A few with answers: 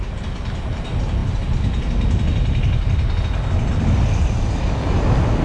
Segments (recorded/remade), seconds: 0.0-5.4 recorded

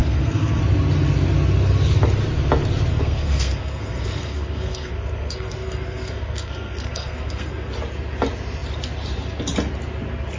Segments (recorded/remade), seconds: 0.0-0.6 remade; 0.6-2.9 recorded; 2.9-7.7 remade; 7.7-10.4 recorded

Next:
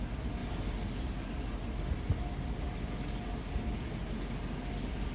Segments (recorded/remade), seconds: 0.0-5.1 recorded